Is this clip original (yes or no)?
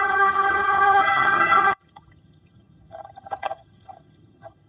no